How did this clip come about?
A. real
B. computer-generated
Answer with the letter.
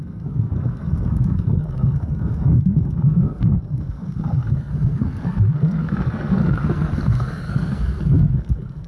B